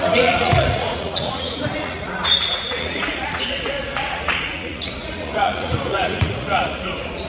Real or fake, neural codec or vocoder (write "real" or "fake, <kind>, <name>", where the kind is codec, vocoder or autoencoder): fake, vocoder, Vocos